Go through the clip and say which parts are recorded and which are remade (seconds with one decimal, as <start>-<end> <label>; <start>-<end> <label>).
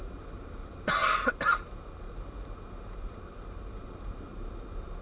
0.0-4.3 remade; 4.3-5.0 recorded